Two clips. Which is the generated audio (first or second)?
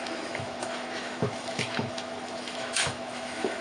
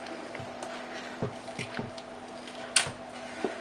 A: first